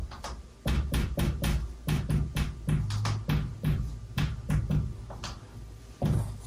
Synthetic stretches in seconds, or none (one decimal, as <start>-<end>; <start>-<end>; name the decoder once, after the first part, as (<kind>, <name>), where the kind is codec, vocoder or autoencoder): 0.0-1.2 (vocoder, BigVGAN v2); 3.5-4.6